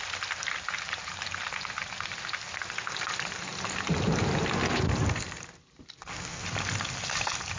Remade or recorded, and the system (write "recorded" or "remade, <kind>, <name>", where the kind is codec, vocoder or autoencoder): recorded